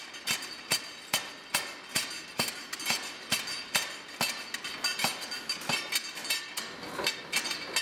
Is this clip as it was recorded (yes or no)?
yes